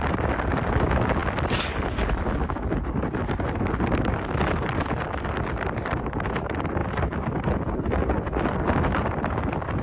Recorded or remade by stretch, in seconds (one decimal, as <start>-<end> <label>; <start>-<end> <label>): 0.0-9.8 recorded